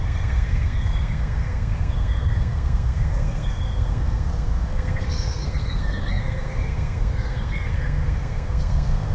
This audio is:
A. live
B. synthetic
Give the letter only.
B